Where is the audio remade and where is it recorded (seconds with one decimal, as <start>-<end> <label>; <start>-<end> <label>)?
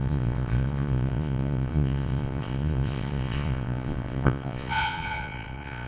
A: 0.0-5.9 remade